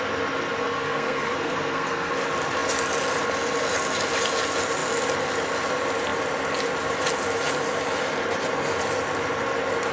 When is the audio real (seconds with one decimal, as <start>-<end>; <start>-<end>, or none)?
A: 0.0-0.6; 2.1-9.9